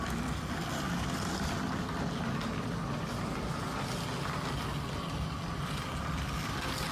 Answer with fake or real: real